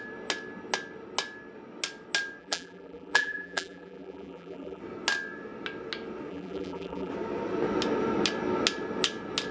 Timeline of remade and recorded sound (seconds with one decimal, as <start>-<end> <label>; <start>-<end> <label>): 0.0-2.4 recorded; 2.4-4.8 remade; 4.8-6.3 recorded; 6.3-7.1 remade; 7.1-9.5 recorded